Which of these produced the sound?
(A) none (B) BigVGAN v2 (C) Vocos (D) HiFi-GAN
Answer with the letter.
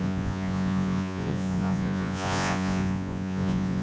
C